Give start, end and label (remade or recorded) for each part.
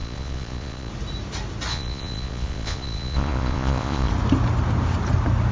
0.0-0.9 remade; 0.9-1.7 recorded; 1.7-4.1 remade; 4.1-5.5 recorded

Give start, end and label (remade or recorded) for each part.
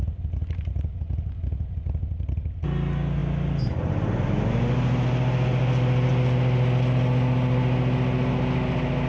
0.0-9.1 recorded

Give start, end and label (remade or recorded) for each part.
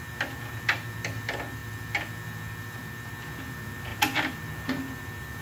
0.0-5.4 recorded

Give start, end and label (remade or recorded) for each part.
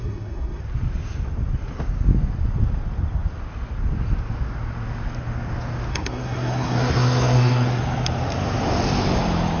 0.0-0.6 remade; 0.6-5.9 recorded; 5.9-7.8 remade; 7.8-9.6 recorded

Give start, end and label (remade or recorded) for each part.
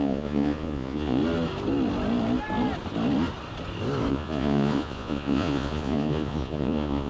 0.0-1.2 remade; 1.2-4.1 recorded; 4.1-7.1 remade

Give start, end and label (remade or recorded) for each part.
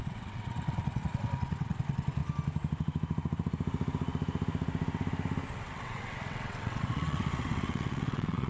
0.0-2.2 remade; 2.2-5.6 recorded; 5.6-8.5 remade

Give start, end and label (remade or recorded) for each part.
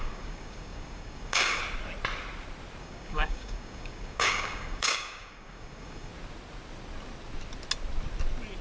0.0-1.6 remade; 1.6-2.8 recorded; 2.8-6.1 remade; 6.1-8.6 recorded